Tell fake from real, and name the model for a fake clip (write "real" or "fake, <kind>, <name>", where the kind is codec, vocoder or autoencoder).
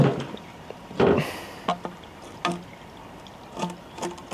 real